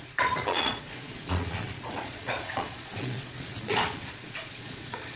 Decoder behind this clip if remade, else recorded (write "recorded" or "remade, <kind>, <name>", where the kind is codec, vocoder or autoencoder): remade, vocoder, Vocos